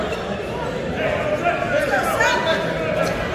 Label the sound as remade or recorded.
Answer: recorded